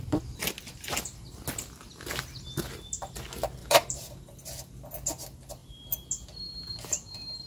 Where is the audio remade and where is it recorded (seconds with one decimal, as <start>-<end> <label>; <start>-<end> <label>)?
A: 0.0-3.6 recorded; 3.6-4.3 remade; 4.3-7.5 recorded